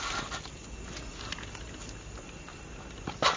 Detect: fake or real real